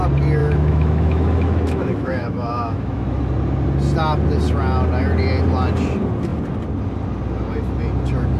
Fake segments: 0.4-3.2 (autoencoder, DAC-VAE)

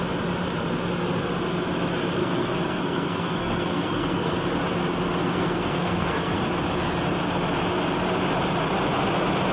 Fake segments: 2.2-4.4 (codec, SNAC); 5.2-6.4

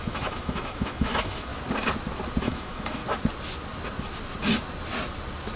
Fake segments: 0.0-1.5 (autoencoder, DAC-VAE); 2.4-3.0

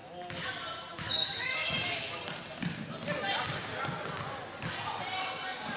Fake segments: 0.0-0.5 (autoencoder, DAC-VAE); 0.9-2.2

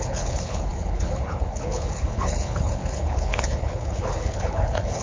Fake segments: 0.0-5.0 (codec, HILCodec)